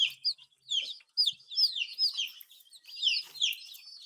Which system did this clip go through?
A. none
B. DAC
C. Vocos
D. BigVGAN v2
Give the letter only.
A